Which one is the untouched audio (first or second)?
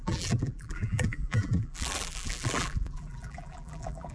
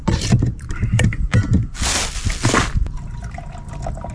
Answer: second